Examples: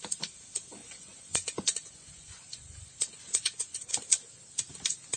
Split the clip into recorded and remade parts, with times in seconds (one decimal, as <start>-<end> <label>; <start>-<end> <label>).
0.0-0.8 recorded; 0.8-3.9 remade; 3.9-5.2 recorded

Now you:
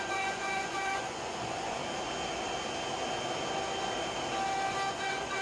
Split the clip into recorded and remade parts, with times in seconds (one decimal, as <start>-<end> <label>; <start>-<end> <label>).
0.0-1.8 remade; 1.8-4.9 recorded; 4.9-5.4 remade

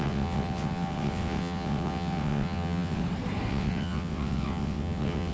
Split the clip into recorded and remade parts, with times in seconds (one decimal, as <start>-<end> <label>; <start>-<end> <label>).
0.0-3.0 remade; 3.0-3.5 recorded; 3.5-5.3 remade

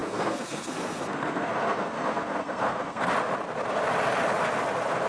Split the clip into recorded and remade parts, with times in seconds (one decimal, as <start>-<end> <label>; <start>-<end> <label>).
0.0-3.1 remade; 3.1-5.1 recorded

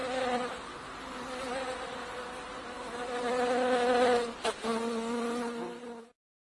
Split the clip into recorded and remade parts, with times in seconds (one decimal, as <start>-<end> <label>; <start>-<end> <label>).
0.0-3.3 remade; 3.3-4.7 recorded; 4.7-6.0 remade; 6.0-6.6 recorded

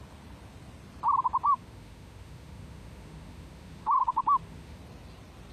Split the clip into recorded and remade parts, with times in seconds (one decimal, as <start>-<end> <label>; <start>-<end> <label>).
0.0-1.5 recorded; 1.5-4.8 remade; 4.8-5.5 recorded